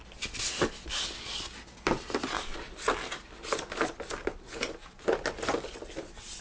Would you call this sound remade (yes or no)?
no